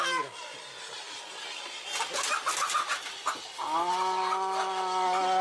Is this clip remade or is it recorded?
recorded